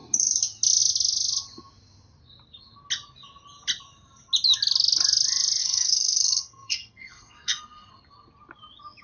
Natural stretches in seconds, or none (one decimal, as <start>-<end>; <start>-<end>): 0.0-5.6; 7.9-9.0